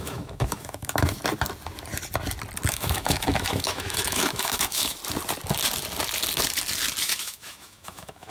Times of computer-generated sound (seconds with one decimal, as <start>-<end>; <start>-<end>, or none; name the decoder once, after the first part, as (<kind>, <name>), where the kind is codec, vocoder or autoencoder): 0.0-1.2 (autoencoder, DAC-VAE); 2.7-5.0; 7.0-8.3